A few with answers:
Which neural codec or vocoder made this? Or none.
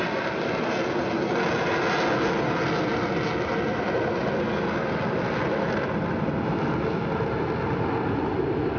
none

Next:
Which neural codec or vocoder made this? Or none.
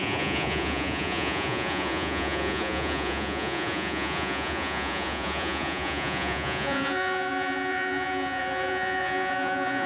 vocoder, Vocos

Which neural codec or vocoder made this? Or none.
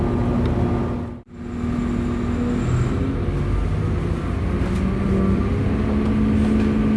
none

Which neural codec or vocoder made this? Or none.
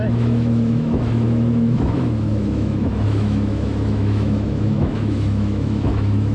autoencoder, DAC-VAE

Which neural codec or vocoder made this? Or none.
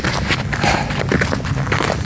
none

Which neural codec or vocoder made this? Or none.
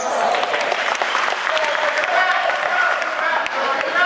vocoder, BigVGAN v2